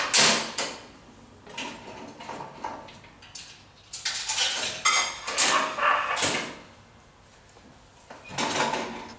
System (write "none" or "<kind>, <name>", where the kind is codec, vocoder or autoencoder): none